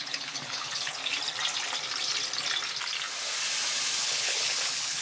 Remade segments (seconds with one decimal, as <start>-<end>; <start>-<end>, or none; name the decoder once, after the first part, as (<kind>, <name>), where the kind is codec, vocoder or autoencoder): 0.0-1.0 (codec, HILCodec); 4.0-5.0